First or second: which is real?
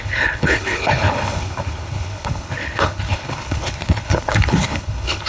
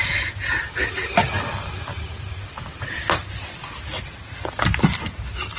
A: second